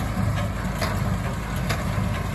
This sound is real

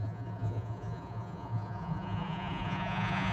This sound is fake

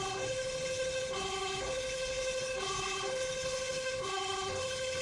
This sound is fake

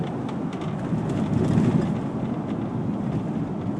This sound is real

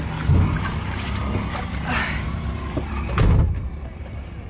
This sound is real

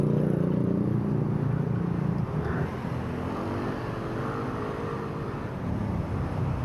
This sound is real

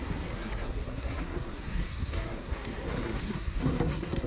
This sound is fake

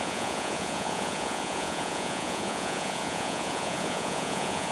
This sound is fake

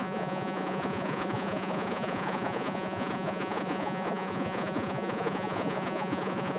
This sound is fake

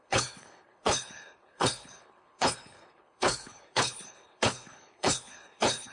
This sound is fake